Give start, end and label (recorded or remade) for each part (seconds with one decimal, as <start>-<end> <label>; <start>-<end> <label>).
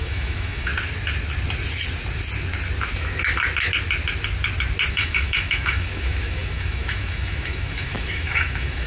0.0-0.7 remade; 0.7-4.9 recorded; 4.9-8.9 remade